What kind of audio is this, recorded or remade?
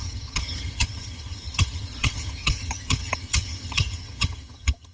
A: remade